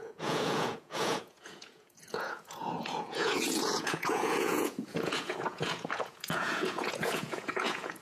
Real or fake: fake